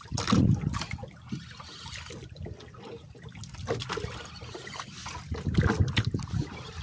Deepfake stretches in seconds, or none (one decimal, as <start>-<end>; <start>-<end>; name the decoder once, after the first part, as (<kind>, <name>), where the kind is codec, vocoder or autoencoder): none